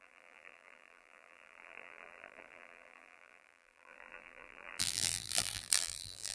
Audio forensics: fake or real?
fake